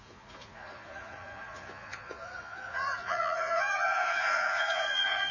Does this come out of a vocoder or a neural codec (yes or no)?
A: yes